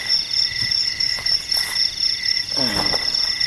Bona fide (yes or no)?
yes